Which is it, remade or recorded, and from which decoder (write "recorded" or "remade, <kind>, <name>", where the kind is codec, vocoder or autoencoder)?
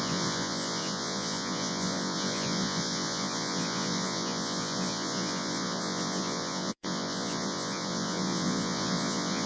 remade, vocoder, Vocos